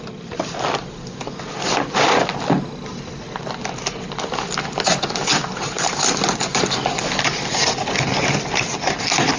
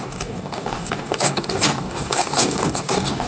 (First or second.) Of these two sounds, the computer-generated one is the second